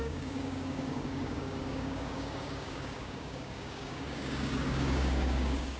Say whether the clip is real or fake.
fake